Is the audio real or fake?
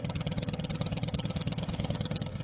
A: fake